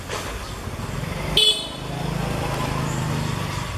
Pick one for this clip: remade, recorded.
recorded